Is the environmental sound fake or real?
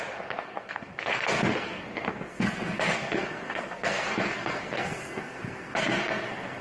fake